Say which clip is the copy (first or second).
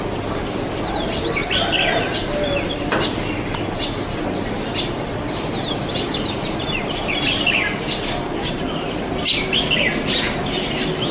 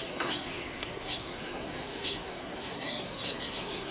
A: second